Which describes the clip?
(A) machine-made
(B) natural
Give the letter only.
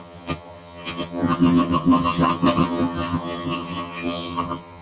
A